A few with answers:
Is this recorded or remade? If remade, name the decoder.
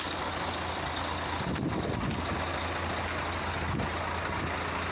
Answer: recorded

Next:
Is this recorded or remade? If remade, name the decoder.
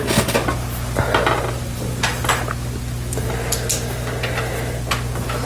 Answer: recorded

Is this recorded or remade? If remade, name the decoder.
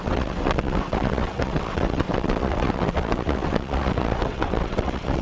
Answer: remade, vocoder, WaveNeXt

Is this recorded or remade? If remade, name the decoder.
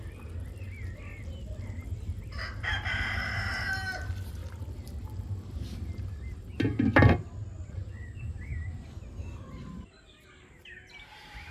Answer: recorded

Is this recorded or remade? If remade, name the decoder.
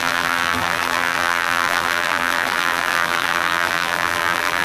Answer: remade, vocoder, BigVGAN v2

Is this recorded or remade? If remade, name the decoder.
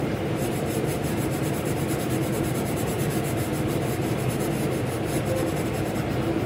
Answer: remade, vocoder, BigVGAN v2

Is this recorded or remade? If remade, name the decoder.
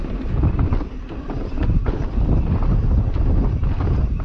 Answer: recorded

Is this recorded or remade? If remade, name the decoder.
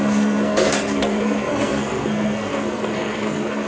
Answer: remade, codec, SNAC